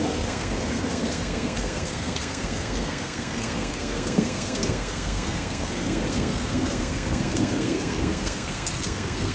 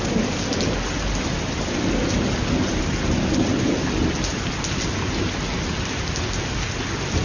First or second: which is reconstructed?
first